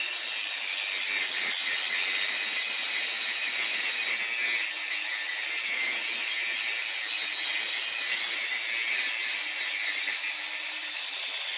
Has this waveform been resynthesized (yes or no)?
no